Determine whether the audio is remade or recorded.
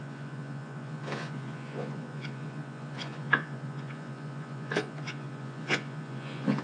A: remade